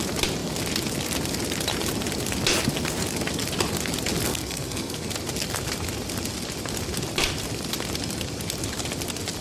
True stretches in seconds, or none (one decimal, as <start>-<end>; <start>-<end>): 0.0-4.3; 5.1-9.4